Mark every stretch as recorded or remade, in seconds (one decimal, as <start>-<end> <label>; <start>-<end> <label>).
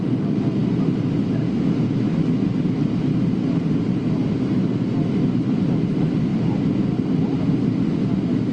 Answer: 0.0-6.3 recorded; 6.3-7.5 remade; 7.5-8.5 recorded